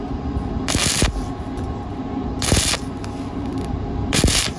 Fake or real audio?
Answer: real